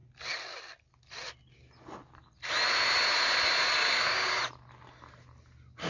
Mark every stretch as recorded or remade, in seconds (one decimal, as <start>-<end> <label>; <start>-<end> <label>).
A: 0.0-3.8 recorded; 3.8-4.4 remade; 4.4-5.9 recorded